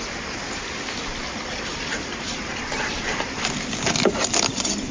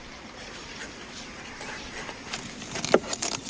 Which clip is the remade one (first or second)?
first